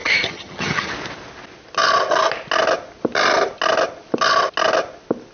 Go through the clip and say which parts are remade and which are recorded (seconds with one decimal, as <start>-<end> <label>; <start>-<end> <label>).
0.0-0.9 remade; 0.9-5.3 recorded